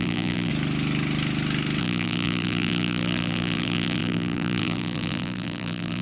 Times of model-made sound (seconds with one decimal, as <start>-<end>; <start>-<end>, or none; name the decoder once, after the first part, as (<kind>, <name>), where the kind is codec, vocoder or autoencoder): 0.0-0.5 (vocoder, BigVGAN v2); 1.8-6.0